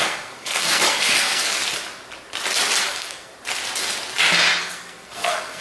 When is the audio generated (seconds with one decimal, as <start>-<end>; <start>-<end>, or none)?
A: 0.0-1.6; 2.8-3.3; 4.6-5.6